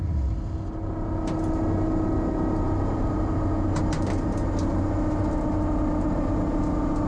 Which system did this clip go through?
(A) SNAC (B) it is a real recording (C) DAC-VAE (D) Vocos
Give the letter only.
B